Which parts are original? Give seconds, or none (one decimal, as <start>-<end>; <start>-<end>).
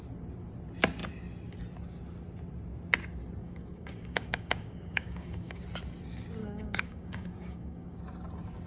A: 0.0-3.4; 5.6-6.4; 8.0-8.7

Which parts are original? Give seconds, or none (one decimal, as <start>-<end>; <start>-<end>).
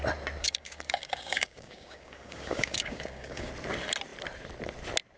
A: 0.0-0.4; 3.5-5.2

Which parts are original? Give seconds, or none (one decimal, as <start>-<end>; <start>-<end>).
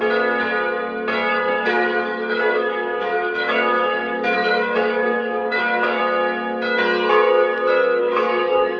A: 0.0-1.3; 6.0-8.0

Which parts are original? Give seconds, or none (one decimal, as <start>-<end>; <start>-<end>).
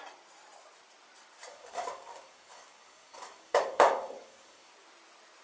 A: 0.0-1.5; 4.7-5.4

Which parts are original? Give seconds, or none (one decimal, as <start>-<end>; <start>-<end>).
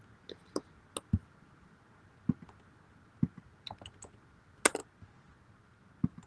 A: 0.0-6.3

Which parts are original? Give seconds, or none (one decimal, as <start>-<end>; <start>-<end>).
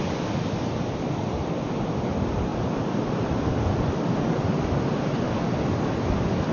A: 0.0-6.5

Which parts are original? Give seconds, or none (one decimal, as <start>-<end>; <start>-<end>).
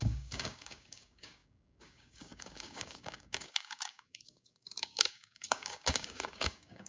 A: none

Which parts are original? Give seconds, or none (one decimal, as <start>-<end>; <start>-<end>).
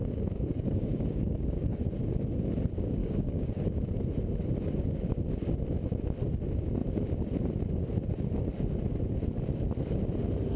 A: 1.8-3.0; 3.6-10.6